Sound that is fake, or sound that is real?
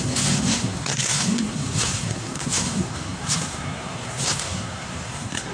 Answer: fake